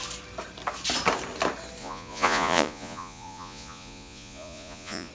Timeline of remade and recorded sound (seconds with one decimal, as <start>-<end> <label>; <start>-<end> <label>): 0.0-1.8 recorded; 1.8-5.1 remade